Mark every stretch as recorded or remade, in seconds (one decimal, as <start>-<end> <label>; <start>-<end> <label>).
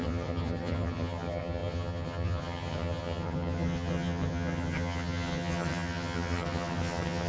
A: 0.0-7.3 remade